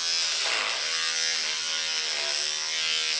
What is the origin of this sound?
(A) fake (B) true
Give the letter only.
B